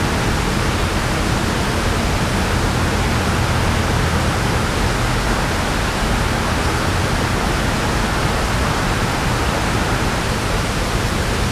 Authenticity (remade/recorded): recorded